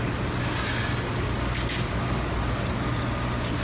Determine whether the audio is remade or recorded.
recorded